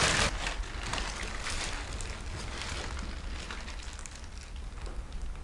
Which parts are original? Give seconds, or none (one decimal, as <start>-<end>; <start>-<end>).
0.0-5.4